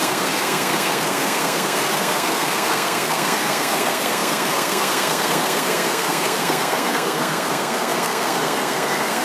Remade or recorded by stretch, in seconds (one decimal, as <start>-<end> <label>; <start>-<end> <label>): 0.0-9.2 remade

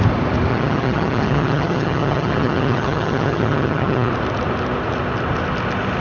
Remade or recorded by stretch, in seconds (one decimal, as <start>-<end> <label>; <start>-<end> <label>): 0.0-0.5 recorded; 0.5-4.1 remade; 4.1-6.0 recorded

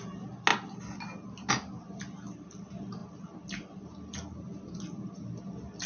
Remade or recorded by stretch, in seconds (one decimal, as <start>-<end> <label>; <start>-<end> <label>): 0.0-5.9 recorded

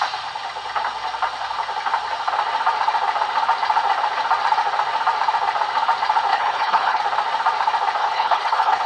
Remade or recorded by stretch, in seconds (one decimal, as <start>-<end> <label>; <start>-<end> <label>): 0.0-6.3 recorded; 6.3-7.0 remade; 7.0-8.0 recorded; 8.0-8.9 remade